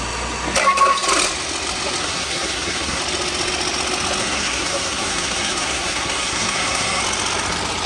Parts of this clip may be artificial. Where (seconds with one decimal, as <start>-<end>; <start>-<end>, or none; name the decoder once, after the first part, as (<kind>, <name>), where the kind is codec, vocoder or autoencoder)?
2.0-3.0 (codec, SNAC); 4.2-7.0